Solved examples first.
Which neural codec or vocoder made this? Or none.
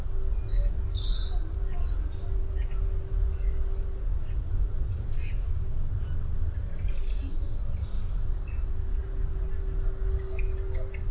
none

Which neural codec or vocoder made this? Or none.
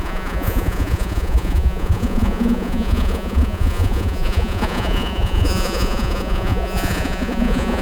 vocoder, Vocos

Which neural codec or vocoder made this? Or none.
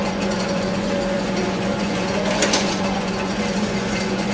vocoder, Vocos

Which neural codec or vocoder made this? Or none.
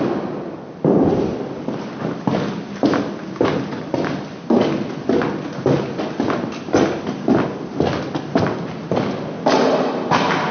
none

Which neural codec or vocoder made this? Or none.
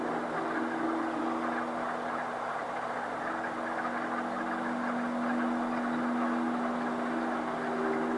none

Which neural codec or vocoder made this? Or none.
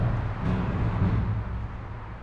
none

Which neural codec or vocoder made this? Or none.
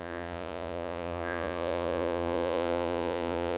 vocoder, Vocos